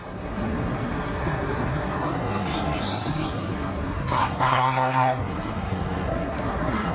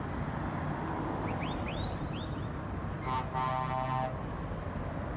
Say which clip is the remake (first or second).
first